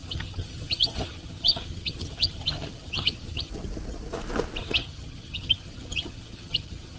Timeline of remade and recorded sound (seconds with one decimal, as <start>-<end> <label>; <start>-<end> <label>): 0.0-3.5 remade; 3.5-4.6 recorded; 4.6-7.0 remade